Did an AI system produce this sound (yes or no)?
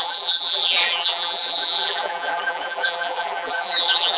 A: yes